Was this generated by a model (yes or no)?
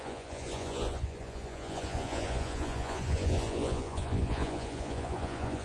yes